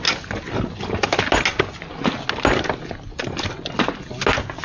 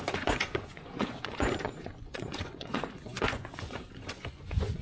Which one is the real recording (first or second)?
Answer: first